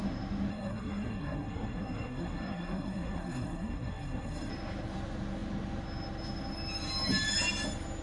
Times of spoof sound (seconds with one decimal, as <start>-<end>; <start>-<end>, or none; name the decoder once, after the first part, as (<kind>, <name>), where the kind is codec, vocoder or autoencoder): 0.5-4.5 (codec, SNAC)